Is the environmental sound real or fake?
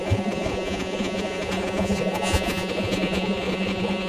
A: fake